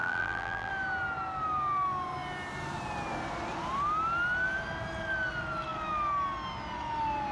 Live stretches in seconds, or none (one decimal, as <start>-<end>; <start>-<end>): 0.7-7.3